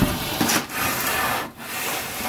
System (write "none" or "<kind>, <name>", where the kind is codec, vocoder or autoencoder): none